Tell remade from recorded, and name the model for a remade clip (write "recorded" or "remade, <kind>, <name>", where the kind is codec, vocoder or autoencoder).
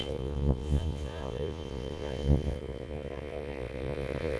remade, vocoder, Vocos